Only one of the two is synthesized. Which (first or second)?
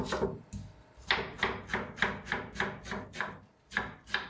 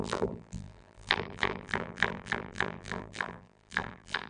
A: second